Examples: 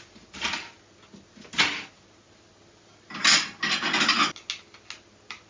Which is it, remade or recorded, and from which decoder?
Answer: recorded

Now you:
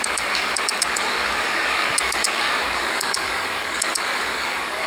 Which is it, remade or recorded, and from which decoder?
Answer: remade, codec, DAC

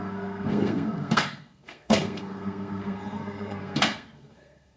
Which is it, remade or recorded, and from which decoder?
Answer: remade, codec, SNAC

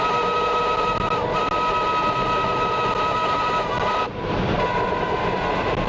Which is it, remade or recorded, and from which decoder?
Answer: recorded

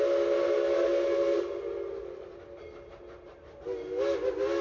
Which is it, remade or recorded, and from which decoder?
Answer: recorded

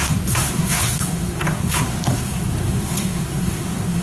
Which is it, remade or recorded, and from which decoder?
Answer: remade, codec, SNAC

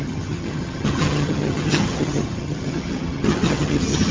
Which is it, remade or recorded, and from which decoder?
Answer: remade, vocoder, HiFi-GAN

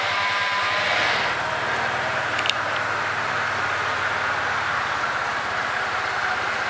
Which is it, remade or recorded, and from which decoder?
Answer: recorded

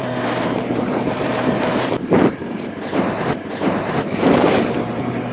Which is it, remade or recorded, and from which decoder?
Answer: remade, vocoder, BigVGAN v2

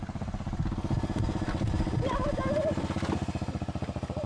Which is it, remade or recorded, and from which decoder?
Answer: recorded